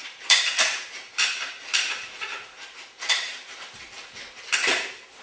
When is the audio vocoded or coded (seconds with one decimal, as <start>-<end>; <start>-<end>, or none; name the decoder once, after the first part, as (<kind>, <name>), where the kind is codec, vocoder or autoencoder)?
0.0-3.1 (vocoder, BigVGAN v2)